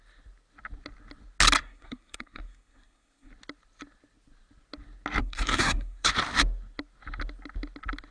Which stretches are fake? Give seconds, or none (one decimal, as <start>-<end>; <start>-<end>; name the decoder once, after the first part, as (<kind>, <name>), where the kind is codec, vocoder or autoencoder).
1.6-3.3 (codec, SNAC); 5.2-6.1